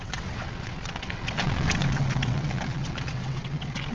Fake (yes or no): yes